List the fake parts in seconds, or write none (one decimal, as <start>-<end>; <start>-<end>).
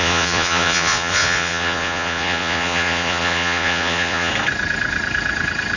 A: 0.0-4.3